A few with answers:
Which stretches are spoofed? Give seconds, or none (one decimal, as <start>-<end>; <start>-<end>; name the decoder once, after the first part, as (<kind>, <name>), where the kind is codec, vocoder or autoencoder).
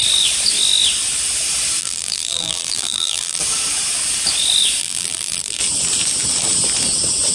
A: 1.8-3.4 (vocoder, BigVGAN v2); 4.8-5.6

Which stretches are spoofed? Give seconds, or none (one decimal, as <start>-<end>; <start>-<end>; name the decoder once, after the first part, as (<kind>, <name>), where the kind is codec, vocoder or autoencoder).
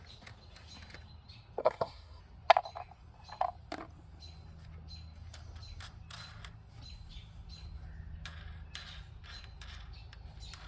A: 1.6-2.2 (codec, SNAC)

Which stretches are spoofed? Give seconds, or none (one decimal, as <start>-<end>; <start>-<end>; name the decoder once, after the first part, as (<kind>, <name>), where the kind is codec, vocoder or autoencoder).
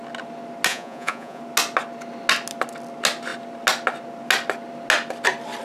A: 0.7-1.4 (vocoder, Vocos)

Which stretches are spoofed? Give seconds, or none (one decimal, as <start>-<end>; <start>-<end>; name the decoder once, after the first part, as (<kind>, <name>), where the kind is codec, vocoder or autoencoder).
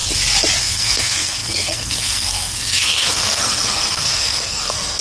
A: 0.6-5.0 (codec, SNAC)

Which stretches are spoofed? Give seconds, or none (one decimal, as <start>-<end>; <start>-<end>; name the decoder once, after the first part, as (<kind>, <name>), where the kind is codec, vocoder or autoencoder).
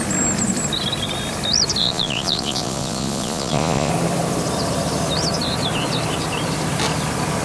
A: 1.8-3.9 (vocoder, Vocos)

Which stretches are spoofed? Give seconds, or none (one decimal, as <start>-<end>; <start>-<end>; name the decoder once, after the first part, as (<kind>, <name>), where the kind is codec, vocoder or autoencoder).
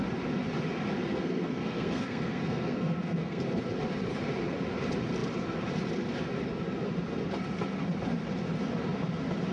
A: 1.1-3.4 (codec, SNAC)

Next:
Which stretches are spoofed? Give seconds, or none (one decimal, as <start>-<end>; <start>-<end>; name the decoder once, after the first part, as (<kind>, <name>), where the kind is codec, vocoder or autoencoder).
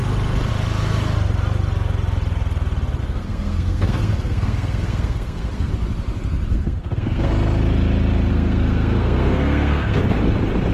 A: 3.0-5.7 (codec, SNAC); 6.5-7.3; 8.3-10.0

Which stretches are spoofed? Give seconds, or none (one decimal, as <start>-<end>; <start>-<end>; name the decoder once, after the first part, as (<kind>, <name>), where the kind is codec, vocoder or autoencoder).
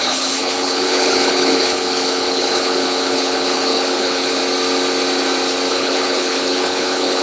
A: 0.0-4.4 (codec, HILCodec); 5.7-7.2